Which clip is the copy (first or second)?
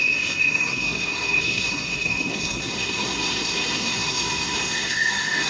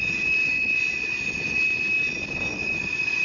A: first